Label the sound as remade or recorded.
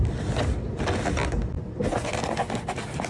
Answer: recorded